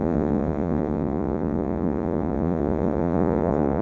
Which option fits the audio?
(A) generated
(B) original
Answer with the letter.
A